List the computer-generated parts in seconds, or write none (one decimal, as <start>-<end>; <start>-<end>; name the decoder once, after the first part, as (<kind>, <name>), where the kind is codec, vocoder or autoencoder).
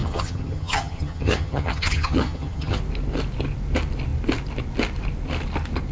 0.0-2.8 (vocoder, HiFi-GAN)